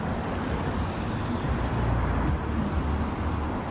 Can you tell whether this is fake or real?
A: real